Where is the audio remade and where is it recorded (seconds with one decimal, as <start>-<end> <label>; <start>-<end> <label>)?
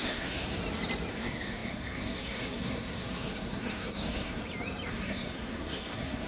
0.0-0.6 remade; 0.6-1.1 recorded; 1.1-4.4 remade; 4.4-4.9 recorded; 4.9-6.3 remade